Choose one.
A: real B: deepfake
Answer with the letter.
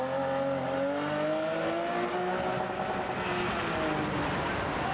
A